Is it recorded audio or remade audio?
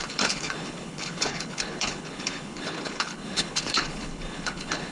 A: remade